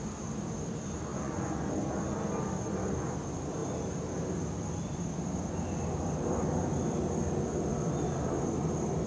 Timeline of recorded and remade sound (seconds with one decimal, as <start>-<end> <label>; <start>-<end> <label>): 0.0-1.1 recorded; 1.1-1.7 remade; 1.7-9.1 recorded